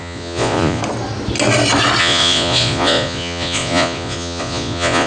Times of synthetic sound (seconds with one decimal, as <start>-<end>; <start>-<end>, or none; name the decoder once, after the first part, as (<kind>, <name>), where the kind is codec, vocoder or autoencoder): 0.0-0.8 (vocoder, Vocos); 2.0-5.1